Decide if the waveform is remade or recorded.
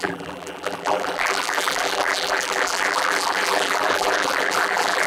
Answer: remade